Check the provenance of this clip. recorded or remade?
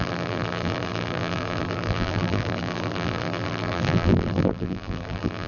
remade